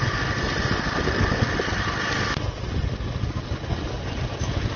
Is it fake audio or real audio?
real